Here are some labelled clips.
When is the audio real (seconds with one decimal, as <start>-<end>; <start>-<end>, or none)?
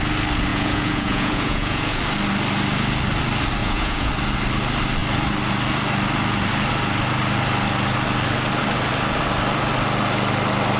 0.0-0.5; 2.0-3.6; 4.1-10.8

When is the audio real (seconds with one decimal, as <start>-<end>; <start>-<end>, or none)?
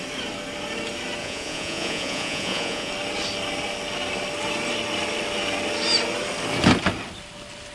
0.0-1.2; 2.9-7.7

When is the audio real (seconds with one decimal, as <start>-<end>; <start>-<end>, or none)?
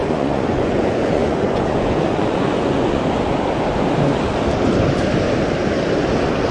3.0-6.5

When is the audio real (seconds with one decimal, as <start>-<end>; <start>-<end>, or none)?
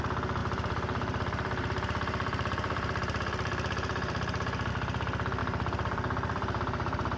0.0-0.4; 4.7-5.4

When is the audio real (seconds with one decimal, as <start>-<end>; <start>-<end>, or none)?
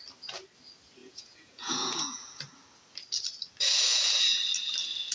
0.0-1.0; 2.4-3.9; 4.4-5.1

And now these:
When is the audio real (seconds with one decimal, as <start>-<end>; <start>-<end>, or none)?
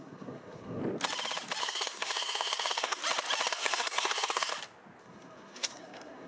0.8-1.6; 3.0-3.5; 4.5-5.0